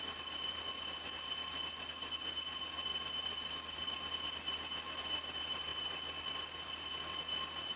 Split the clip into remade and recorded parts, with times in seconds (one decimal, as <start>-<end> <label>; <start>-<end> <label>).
0.0-7.8 recorded